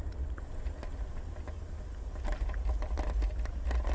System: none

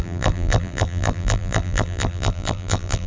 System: vocoder, BigVGAN v2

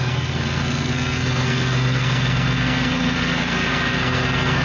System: codec, SNAC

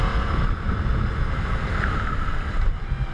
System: none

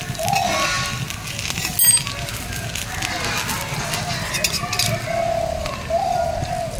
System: none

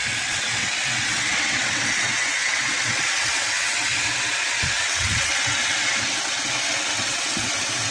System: vocoder, WaveNeXt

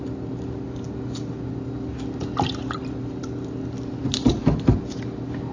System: none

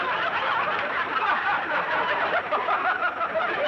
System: vocoder, BigVGAN v2